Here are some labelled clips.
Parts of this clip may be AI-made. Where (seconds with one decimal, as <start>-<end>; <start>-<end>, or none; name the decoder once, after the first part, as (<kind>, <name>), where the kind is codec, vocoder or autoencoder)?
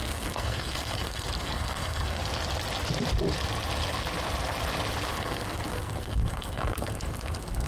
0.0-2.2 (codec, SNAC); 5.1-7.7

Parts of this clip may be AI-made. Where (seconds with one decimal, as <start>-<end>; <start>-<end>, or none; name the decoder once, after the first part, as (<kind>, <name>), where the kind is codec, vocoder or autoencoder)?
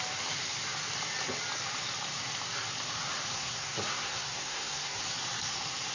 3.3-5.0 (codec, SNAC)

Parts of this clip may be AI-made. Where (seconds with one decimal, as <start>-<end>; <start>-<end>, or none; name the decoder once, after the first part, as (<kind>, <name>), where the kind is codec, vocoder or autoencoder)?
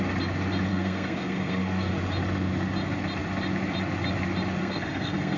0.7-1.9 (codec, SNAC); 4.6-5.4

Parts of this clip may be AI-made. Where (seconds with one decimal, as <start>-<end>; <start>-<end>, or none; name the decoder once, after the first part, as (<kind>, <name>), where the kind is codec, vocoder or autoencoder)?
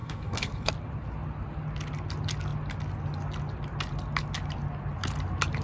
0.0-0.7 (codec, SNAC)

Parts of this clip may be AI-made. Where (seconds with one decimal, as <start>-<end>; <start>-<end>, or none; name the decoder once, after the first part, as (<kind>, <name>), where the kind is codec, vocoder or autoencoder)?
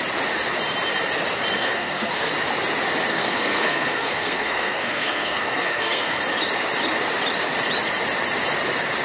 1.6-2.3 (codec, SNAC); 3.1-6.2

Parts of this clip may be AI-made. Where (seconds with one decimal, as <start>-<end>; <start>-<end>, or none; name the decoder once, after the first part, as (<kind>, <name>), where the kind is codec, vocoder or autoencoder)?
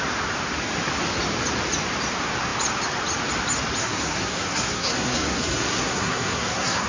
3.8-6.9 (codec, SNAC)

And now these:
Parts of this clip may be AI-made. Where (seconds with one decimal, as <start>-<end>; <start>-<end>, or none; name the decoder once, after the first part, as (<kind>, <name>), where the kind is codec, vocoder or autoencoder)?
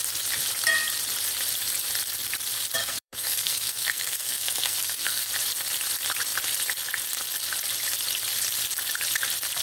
2.8-5.3 (codec, SNAC)